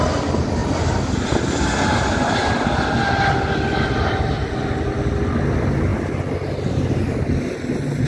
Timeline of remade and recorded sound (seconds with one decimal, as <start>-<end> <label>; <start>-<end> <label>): 0.0-8.1 recorded